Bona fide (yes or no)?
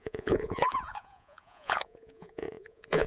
no